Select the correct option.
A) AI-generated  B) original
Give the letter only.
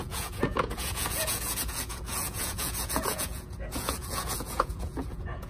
A